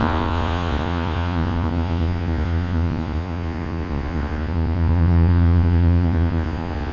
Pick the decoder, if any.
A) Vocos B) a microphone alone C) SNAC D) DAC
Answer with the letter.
A